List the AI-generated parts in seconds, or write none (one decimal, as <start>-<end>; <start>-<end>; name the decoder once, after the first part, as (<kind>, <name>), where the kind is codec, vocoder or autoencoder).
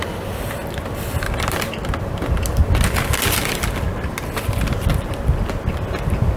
none